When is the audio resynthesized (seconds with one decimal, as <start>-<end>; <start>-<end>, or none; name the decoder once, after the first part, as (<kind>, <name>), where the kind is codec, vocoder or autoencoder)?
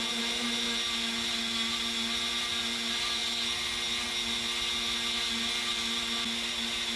none